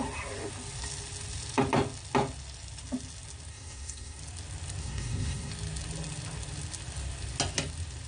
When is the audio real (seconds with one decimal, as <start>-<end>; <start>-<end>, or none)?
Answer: 0.0-3.5; 4.2-4.8; 5.5-8.1